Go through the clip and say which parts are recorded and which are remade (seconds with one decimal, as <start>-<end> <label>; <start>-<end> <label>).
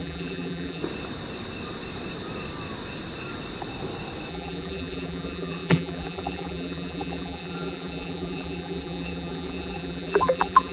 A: 0.0-0.8 remade; 0.8-4.3 recorded; 4.3-10.7 remade